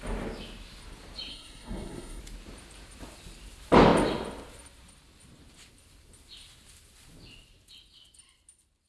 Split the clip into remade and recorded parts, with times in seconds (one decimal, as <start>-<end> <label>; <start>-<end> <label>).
0.0-1.3 recorded; 1.3-2.2 remade; 2.2-8.9 recorded